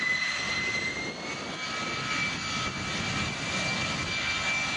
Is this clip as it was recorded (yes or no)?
yes